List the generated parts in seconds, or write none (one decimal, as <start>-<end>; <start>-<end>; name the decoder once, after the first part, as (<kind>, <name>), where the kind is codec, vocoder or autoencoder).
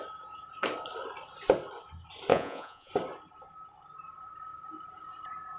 2.3-2.9 (vocoder, Vocos)